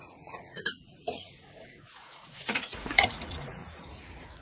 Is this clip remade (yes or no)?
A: yes